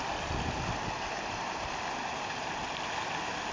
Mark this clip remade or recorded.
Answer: recorded